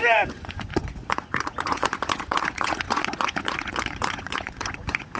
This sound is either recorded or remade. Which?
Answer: remade